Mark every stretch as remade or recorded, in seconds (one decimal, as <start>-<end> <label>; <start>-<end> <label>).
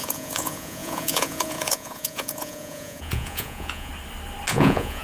0.0-3.9 remade; 3.9-4.5 recorded; 4.5-5.0 remade